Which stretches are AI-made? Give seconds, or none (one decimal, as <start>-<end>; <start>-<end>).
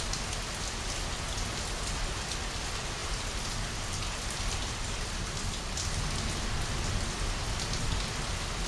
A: none